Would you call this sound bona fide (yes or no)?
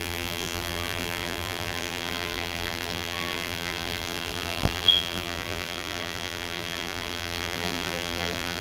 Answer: no